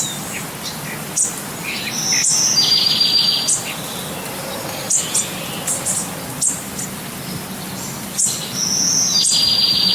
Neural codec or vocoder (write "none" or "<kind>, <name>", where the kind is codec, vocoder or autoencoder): none